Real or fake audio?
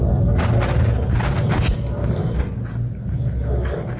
real